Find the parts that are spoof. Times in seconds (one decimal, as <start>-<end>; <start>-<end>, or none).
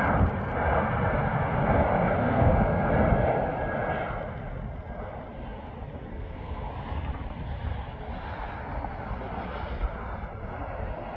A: 2.2-2.9; 6.1-6.7